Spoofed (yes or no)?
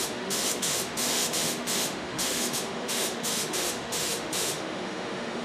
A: yes